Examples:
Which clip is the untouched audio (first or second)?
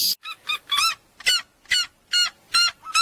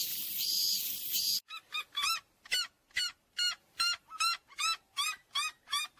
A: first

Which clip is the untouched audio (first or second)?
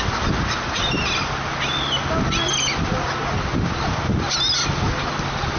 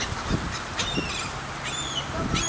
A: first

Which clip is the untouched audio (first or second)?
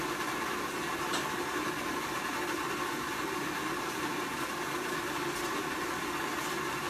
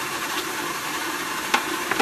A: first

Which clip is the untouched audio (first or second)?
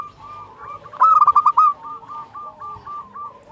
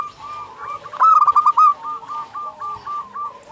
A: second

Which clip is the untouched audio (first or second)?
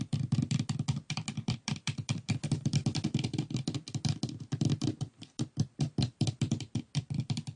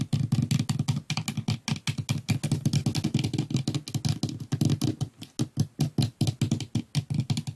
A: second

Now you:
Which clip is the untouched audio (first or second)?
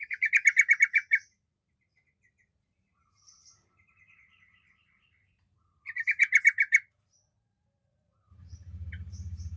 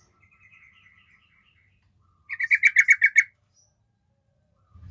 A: second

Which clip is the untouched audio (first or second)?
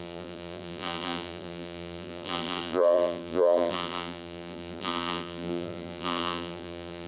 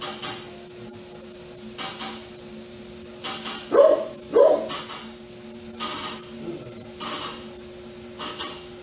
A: second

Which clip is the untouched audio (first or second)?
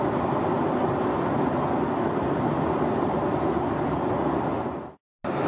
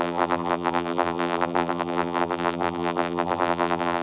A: first